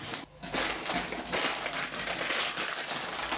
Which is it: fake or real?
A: real